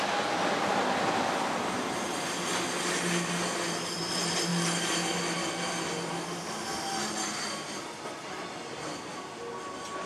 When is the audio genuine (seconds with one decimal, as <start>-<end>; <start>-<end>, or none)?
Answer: 0.0-10.1